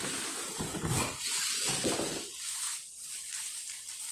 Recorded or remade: recorded